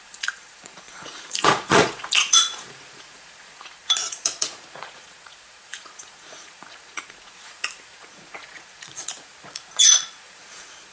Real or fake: fake